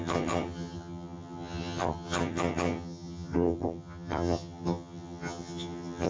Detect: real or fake fake